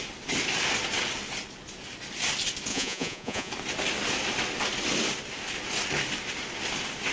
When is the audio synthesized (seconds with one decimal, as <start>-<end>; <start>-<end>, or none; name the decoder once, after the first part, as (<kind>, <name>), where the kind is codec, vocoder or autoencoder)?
2.7-3.5 (vocoder, Vocos)